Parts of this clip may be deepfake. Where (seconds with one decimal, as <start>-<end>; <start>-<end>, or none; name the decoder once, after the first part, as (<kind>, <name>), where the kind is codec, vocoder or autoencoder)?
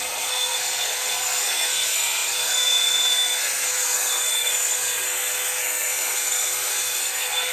0.0-7.5 (codec, SNAC)